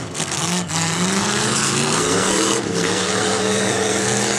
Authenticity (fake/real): fake